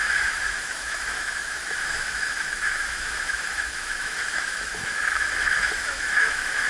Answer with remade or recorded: remade